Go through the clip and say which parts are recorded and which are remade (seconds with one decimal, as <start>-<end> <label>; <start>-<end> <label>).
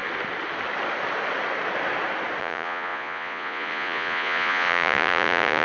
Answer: 0.0-2.4 recorded; 2.4-5.6 remade